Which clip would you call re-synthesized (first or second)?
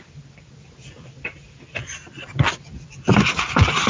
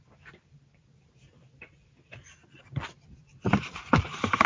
second